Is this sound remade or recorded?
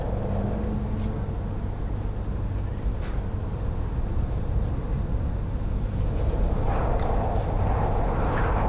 recorded